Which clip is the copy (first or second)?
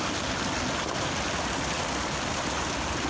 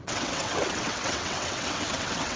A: second